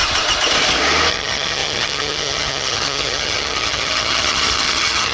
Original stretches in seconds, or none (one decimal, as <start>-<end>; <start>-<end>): 0.0-1.1